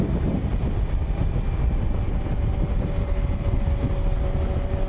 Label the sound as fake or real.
real